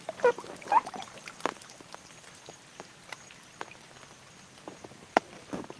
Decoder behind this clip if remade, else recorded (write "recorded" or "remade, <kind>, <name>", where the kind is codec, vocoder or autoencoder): recorded